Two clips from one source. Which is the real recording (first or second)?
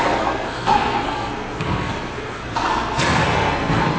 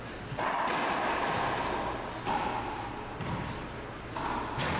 second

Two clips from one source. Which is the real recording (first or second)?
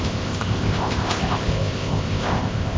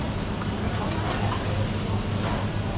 second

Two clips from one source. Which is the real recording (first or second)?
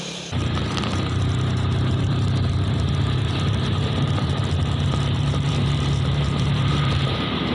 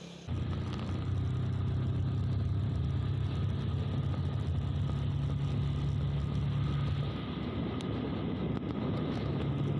second